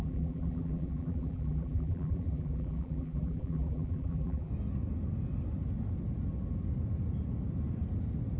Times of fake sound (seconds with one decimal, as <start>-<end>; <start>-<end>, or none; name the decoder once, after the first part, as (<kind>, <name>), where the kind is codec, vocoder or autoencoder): 0.0-4.5 (vocoder, BigVGAN v2)